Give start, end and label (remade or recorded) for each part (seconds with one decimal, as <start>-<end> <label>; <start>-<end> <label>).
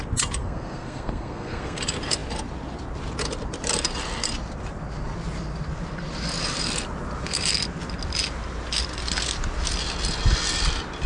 0.0-0.4 recorded; 0.4-1.8 remade; 1.8-11.1 recorded